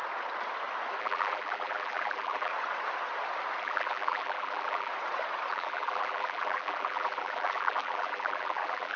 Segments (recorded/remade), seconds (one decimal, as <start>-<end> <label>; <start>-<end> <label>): 0.0-1.0 recorded; 1.0-2.5 remade; 2.5-3.6 recorded; 3.6-4.9 remade; 4.9-5.5 recorded; 5.5-9.0 remade